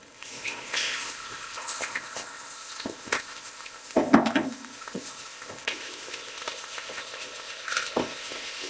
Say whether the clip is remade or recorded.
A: remade